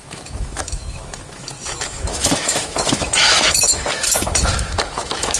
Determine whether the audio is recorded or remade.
remade